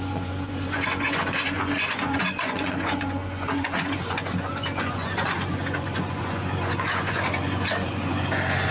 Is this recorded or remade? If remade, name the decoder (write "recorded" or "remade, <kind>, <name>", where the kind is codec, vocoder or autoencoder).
remade, vocoder, Vocos